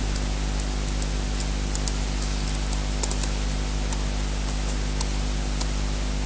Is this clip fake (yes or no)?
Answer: no